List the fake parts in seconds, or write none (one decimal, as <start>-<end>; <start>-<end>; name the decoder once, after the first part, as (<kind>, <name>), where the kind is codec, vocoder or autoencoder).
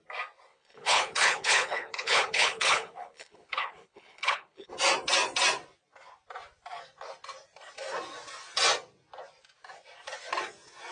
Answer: 0.5-4.7 (codec, HILCodec)